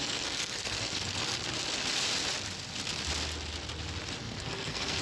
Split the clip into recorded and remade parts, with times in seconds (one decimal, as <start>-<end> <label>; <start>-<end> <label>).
0.0-1.4 remade; 1.4-4.2 recorded; 4.2-5.0 remade